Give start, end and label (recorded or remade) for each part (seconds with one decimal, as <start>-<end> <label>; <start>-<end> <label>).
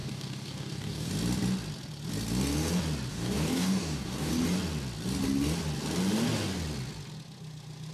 0.0-1.1 remade; 1.1-3.1 recorded; 3.1-4.3 remade; 4.3-7.9 recorded